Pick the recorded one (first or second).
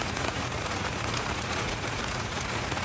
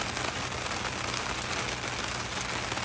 second